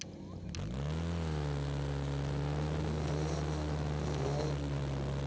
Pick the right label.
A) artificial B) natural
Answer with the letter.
B